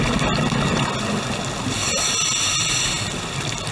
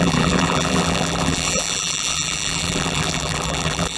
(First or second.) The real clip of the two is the first